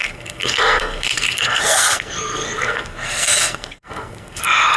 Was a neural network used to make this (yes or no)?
yes